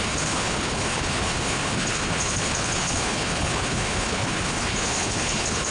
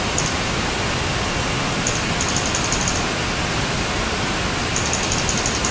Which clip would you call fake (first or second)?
first